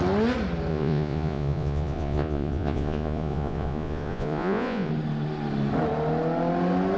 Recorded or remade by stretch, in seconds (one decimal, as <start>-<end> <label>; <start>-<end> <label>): 0.0-0.7 recorded; 0.7-4.9 remade; 4.9-7.0 recorded